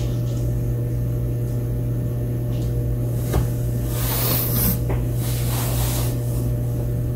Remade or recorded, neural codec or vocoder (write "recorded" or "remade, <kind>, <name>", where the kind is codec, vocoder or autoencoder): recorded